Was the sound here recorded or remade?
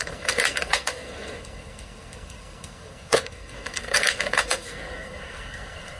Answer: remade